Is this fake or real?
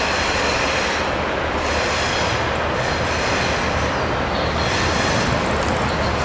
real